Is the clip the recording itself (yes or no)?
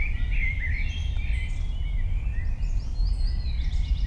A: yes